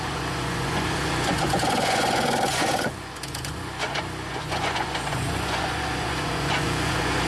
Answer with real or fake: fake